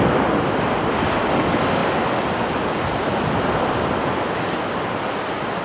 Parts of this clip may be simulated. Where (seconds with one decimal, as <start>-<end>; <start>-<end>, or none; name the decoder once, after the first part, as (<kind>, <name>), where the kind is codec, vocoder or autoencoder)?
none